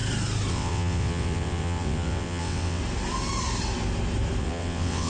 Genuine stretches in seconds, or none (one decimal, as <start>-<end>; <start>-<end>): 0.0-0.5; 2.8-4.4